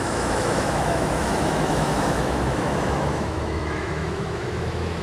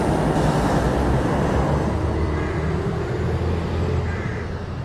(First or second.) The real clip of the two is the second